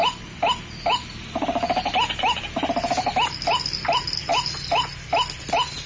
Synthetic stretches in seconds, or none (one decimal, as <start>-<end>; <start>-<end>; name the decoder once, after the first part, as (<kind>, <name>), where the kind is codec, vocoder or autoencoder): none